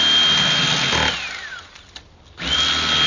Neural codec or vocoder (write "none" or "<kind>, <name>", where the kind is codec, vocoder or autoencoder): none